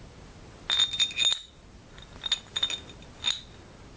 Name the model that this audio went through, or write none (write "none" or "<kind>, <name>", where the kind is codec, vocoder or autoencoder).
none